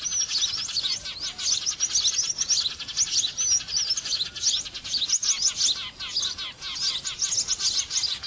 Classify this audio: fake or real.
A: real